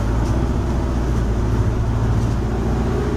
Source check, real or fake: real